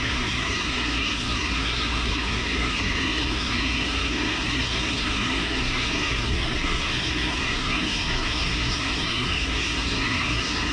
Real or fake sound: fake